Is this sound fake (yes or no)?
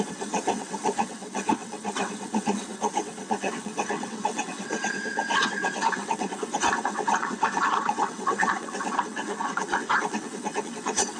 yes